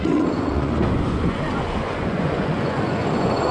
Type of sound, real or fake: fake